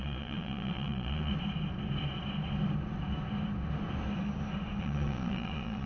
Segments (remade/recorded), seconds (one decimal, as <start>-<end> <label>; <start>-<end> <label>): 0.0-1.3 remade; 1.3-4.8 recorded; 4.8-5.9 remade